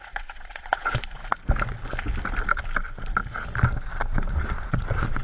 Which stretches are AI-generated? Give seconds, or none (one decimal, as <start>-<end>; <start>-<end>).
0.0-1.2; 4.3-5.2